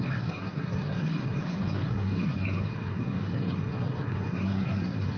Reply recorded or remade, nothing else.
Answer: remade